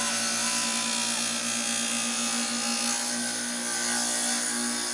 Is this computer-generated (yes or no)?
no